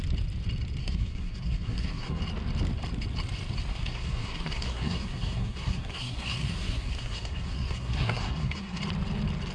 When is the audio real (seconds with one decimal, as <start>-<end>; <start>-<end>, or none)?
0.0-0.8; 2.2-3.7; 8.8-9.5